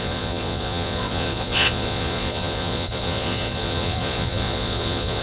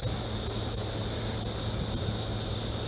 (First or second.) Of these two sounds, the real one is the second